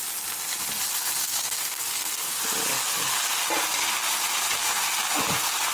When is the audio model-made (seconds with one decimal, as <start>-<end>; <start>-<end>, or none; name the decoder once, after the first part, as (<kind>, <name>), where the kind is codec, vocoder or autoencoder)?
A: 1.2-2.4 (codec, SNAC)